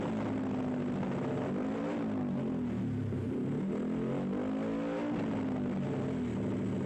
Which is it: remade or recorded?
recorded